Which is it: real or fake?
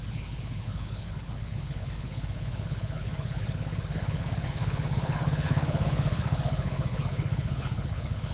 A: fake